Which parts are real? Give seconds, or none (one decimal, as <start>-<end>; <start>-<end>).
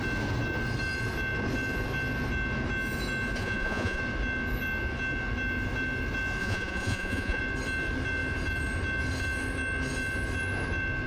0.0-3.4; 4.0-6.4; 7.4-11.1